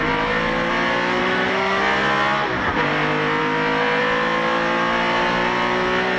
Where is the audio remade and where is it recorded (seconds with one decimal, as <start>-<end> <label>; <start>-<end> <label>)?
0.0-1.2 recorded; 1.2-1.8 remade; 1.8-6.2 recorded